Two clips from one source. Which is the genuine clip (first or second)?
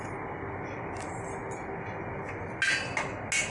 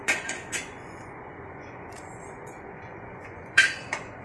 first